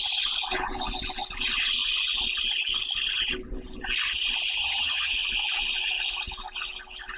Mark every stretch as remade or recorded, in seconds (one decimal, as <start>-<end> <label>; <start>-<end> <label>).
0.0-4.6 recorded; 4.6-5.1 remade; 5.1-7.2 recorded